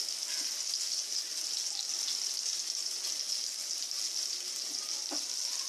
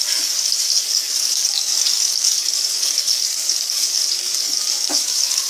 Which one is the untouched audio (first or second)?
first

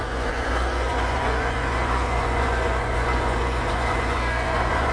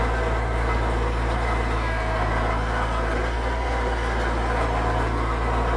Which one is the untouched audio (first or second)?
second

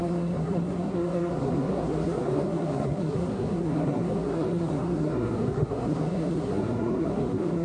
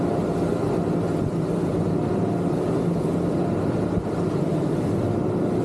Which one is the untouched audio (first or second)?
second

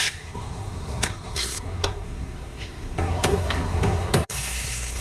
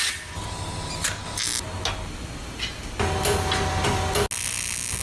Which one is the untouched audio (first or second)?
second